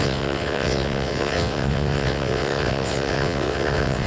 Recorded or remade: remade